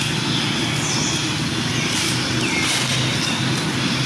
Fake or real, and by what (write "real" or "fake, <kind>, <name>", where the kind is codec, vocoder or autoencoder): real